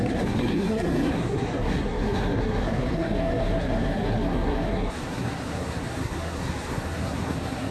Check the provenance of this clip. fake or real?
fake